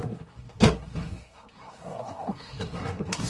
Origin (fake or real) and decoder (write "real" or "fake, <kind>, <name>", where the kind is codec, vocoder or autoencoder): fake, codec, SNAC